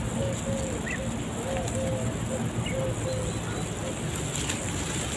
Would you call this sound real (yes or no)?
yes